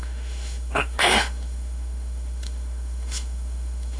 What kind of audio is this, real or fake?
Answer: fake